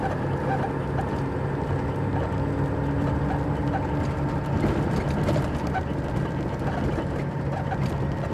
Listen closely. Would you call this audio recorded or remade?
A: recorded